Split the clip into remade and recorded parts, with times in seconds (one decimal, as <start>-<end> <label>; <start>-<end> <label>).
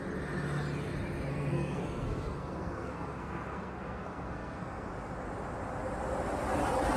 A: 0.0-1.3 recorded; 1.3-4.9 remade; 4.9-7.0 recorded